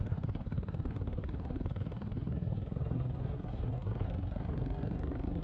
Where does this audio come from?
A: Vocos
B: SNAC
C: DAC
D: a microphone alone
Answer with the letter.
B